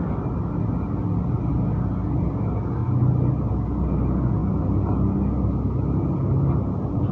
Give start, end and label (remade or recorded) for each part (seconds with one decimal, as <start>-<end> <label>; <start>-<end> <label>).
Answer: 0.0-7.1 recorded